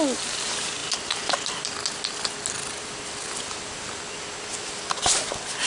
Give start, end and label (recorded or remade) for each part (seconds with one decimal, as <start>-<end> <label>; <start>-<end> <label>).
0.0-5.7 recorded